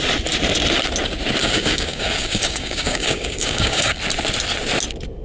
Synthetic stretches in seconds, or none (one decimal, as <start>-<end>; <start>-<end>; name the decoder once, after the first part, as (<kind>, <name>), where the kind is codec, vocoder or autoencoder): 1.4-4.0 (codec, DAC)